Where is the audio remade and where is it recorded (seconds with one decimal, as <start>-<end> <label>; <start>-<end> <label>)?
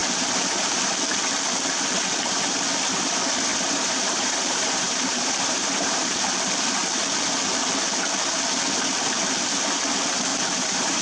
0.0-3.5 recorded; 3.5-6.2 remade; 6.2-10.3 recorded; 10.3-11.0 remade